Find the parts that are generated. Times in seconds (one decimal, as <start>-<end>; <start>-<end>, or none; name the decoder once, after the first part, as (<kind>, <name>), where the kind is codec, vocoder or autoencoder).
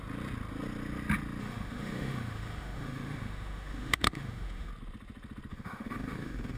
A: 1.4-4.7 (autoencoder, DAC-VAE); 5.5-6.6